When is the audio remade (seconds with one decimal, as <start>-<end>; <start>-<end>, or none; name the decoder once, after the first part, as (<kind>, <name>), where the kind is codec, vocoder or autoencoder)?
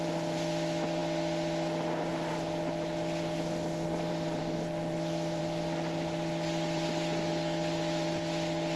4.1-5.4 (autoencoder, DAC-VAE)